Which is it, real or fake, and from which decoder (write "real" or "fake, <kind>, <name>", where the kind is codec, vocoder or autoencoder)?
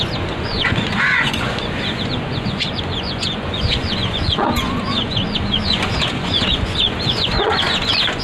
fake, vocoder, Vocos